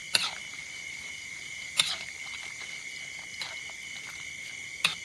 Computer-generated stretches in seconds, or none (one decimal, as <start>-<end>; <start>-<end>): 0.0-3.0